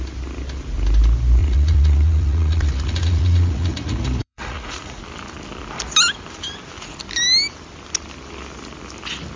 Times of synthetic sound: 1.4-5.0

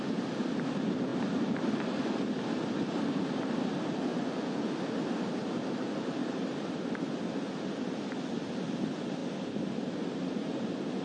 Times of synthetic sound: 4.1-4.7

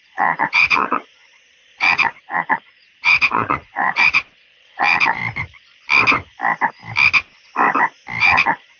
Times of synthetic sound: 0.0-5.2; 8.2-8.8

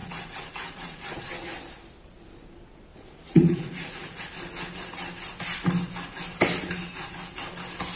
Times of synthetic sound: 0.0-1.2; 2.9-4.2

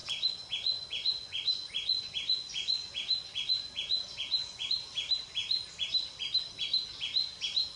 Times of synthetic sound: 0.0-4.7

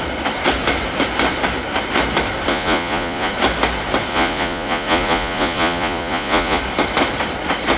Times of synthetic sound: 2.5-3.3; 4.1-6.6

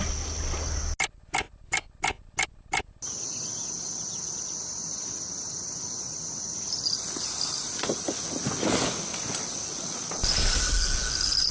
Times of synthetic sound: none